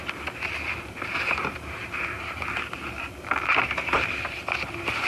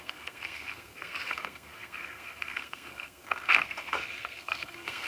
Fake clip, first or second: second